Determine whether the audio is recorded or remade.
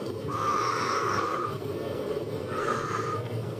remade